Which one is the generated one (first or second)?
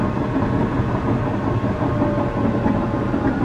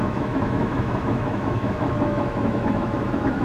second